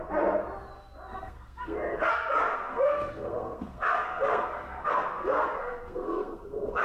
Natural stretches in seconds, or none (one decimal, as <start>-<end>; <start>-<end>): 0.0-1.1; 2.1-2.5